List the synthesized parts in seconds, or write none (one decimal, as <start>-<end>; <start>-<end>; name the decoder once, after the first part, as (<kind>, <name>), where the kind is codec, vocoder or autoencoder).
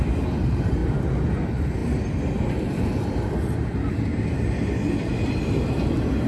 none